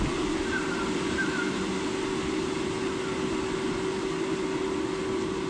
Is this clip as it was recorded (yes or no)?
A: yes